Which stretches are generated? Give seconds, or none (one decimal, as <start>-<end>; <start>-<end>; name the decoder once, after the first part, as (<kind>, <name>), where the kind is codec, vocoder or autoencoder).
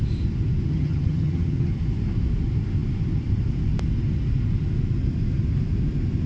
0.7-1.7 (vocoder, HiFi-GAN)